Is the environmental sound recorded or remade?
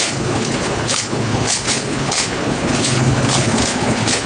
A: remade